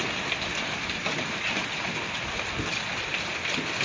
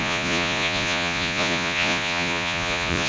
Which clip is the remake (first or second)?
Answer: second